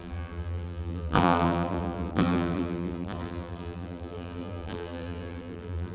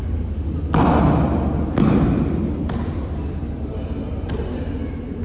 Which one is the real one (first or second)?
second